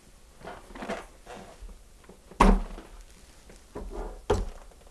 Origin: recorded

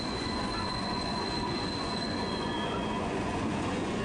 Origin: remade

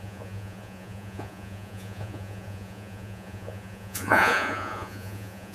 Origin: remade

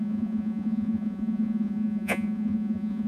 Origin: remade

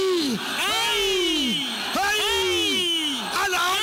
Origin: recorded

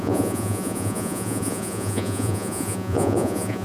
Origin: remade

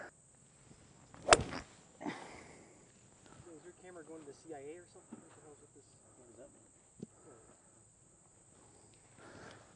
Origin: recorded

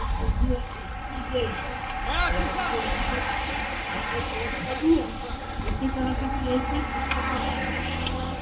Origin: recorded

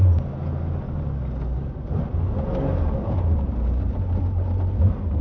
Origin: recorded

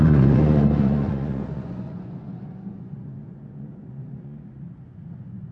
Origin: remade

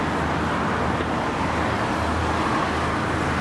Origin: recorded